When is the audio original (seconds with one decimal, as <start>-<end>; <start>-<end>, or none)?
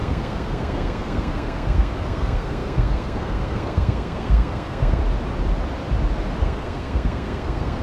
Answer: 5.0-6.4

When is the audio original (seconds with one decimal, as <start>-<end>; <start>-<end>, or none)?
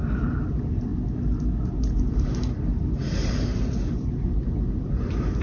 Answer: 0.9-1.8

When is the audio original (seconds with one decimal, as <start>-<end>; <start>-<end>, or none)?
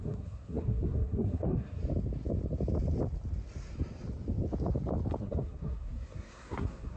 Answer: 1.8-5.2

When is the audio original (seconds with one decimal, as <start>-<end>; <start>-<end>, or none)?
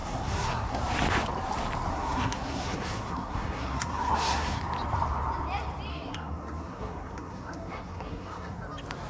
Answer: 0.8-1.9; 4.6-5.9; 8.6-9.1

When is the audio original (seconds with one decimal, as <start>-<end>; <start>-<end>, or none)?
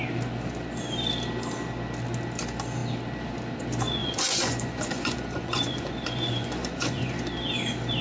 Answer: 0.0-4.0; 7.1-8.0